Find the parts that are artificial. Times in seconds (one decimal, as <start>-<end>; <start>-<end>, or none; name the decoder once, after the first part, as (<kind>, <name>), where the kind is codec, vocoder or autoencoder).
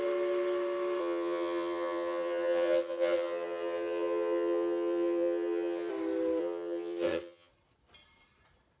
1.0-5.9 (vocoder, HiFi-GAN); 6.4-7.5